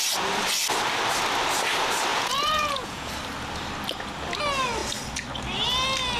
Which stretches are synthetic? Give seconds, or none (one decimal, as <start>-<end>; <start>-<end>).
2.1-3.1